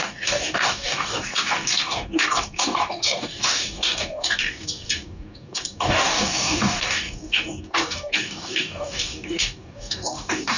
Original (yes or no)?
no